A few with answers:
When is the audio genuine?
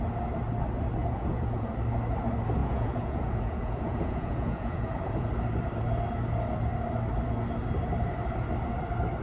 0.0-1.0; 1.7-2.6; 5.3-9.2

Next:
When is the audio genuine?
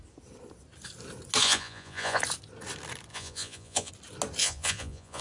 0.0-1.4; 2.2-3.1; 3.9-4.4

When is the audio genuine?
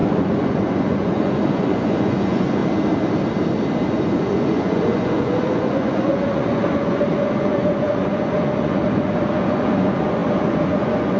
2.6-3.9